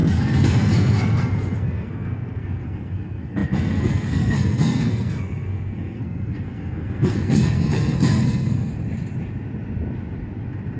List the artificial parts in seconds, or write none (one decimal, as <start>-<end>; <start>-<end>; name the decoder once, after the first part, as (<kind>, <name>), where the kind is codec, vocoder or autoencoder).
0.0-8.7 (codec, SNAC)